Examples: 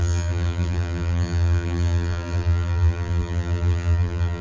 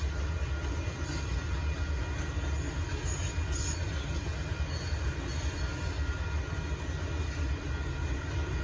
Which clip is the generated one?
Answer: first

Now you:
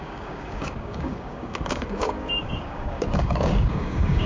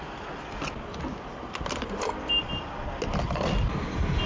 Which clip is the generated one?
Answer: first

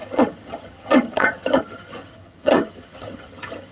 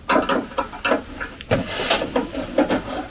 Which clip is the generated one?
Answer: first